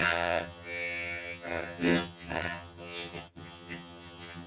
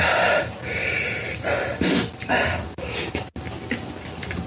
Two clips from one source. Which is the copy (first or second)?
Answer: first